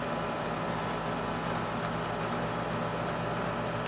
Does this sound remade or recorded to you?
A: recorded